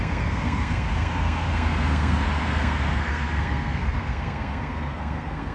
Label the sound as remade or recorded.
remade